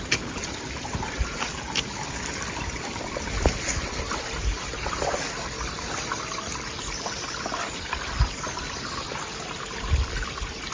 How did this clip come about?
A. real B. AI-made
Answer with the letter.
A